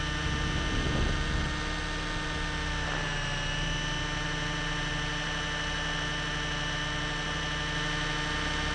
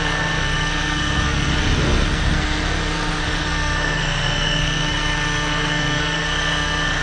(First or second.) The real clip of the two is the first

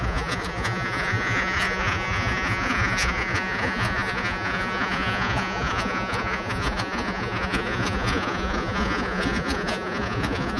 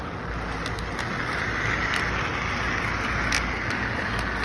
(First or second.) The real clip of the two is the second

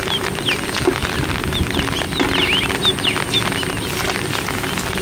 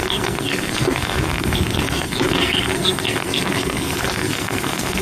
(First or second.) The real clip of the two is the first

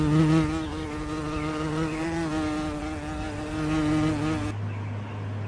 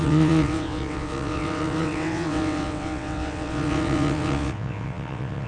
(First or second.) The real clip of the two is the first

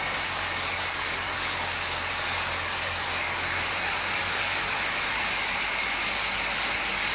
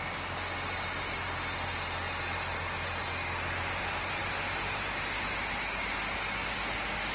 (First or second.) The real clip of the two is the second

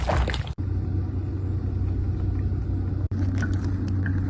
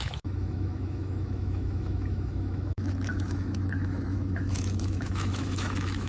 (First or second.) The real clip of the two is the first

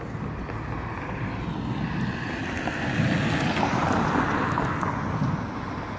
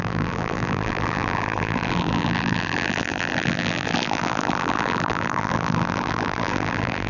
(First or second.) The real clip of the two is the first